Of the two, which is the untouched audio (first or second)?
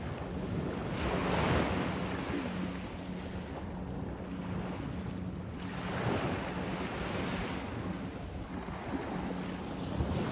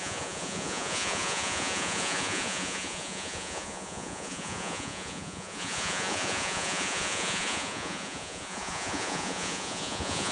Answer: first